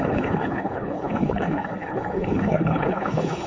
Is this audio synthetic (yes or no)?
yes